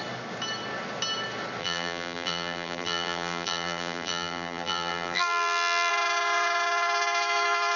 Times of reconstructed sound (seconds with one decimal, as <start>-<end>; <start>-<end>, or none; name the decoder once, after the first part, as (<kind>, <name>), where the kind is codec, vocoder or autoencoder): 1.6-5.9 (vocoder, BigVGAN v2)